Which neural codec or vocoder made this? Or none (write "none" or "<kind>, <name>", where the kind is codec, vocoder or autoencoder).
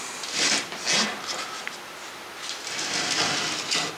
none